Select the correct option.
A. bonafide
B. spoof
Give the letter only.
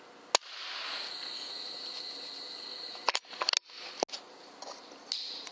A